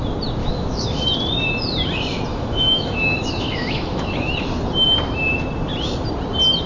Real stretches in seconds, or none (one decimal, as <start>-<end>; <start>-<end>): 0.0-0.4; 1.0-2.3; 4.3-6.7